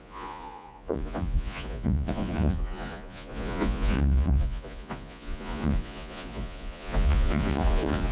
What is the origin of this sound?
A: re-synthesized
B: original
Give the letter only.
A